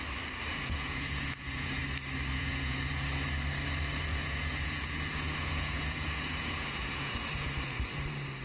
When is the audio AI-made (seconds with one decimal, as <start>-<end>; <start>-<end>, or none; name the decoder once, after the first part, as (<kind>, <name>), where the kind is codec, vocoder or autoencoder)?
0.5-1.8 (vocoder, Vocos); 2.3-2.9; 4.1-7.1